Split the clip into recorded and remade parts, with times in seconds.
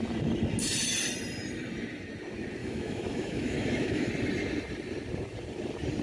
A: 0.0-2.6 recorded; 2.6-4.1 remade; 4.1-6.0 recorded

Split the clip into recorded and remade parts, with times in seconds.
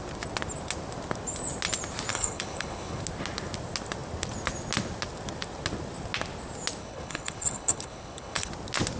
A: 0.0-2.1 recorded; 2.1-3.0 remade; 3.0-6.8 recorded; 6.8-8.5 remade; 8.5-9.0 recorded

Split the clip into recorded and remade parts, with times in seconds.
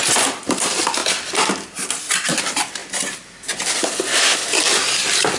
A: 0.0-5.4 recorded